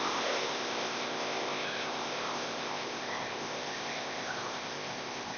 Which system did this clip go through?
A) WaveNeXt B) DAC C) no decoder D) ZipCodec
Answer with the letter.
D